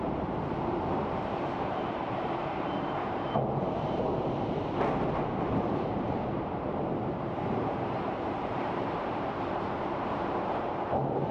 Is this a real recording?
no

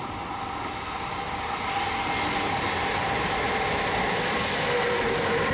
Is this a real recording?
yes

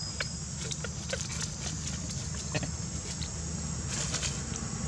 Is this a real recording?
yes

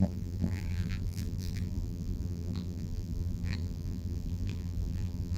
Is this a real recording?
no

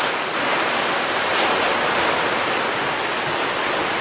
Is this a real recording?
yes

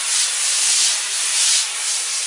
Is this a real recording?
yes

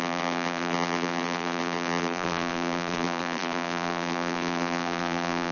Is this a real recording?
no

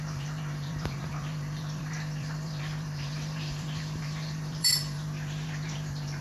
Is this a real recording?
no